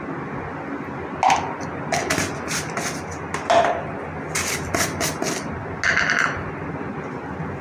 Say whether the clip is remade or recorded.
recorded